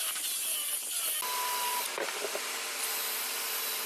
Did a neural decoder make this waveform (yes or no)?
no